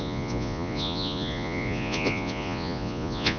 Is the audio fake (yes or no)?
yes